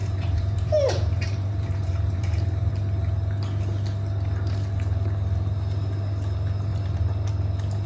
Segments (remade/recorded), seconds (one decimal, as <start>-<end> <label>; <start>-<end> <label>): 0.0-2.7 remade; 2.7-6.7 recorded; 6.7-7.3 remade; 7.3-7.9 recorded